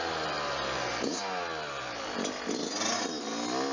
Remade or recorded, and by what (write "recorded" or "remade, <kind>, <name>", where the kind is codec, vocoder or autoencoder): recorded